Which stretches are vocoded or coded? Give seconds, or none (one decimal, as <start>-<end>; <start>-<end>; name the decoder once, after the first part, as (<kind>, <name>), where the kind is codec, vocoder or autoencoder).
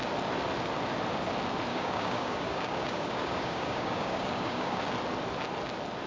1.7-4.8 (codec, DAC)